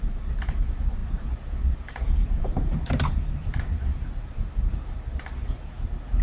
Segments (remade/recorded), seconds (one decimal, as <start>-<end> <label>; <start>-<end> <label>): 0.0-6.2 remade

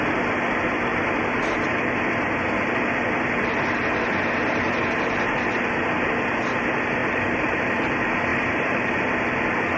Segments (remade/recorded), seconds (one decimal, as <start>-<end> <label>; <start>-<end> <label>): 0.0-7.0 recorded; 7.0-7.8 remade; 7.8-8.3 recorded; 8.3-9.0 remade; 9.0-9.8 recorded